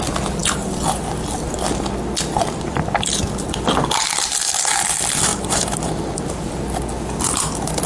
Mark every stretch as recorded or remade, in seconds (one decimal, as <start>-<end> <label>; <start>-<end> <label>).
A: 0.0-5.3 recorded; 5.3-6.5 remade; 6.5-7.9 recorded